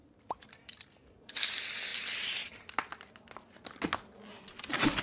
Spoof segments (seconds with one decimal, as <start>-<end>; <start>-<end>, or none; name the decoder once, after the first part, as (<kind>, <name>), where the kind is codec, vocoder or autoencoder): none